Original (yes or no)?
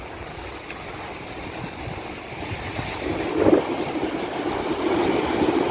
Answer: yes